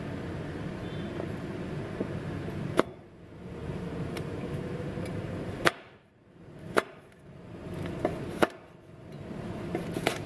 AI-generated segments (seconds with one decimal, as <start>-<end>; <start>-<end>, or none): 3.6-7.1